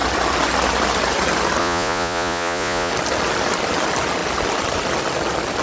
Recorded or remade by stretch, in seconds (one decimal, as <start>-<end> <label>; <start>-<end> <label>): 0.0-1.6 recorded; 1.6-2.9 remade; 2.9-5.6 recorded